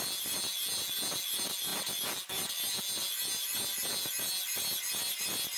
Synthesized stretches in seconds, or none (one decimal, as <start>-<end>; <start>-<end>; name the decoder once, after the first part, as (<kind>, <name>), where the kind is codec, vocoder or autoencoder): none